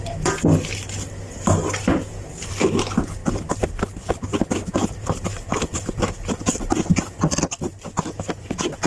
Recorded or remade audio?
recorded